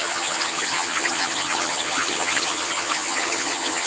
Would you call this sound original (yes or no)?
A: no